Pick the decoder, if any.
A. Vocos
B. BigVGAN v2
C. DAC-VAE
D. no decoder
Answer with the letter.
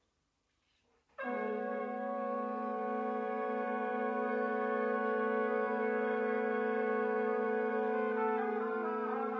B